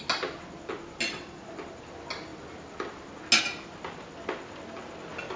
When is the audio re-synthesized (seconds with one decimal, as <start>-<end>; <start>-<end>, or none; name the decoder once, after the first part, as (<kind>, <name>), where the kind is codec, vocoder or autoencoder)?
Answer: none